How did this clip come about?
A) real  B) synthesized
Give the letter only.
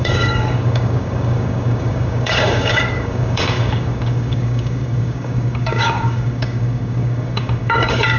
B